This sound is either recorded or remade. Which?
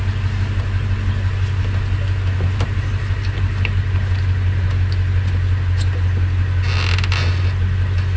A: recorded